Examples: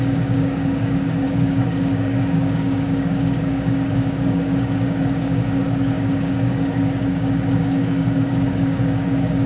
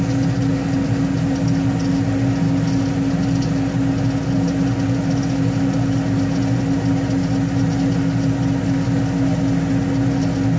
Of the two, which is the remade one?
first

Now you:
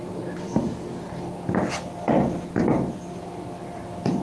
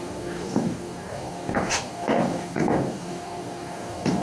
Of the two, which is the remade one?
second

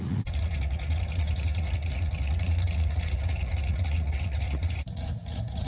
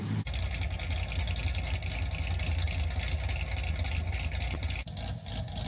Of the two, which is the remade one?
first